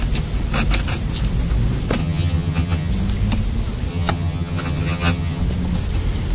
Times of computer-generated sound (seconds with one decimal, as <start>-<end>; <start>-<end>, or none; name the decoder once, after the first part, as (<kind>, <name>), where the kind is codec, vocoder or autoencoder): 2.0-2.9 (vocoder, HiFi-GAN); 3.9-5.4